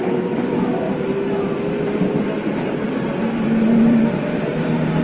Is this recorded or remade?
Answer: remade